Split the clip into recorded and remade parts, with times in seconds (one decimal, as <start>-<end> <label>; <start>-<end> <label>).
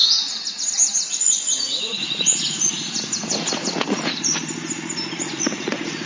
0.0-1.1 recorded; 1.1-4.3 remade; 4.3-5.1 recorded; 5.1-6.1 remade